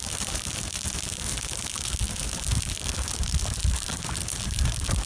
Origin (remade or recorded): remade